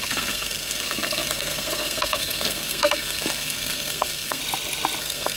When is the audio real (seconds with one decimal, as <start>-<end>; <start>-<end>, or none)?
4.4-5.0